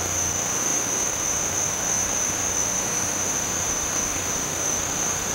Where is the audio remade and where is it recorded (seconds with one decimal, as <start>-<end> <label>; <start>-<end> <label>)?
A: 0.0-5.3 remade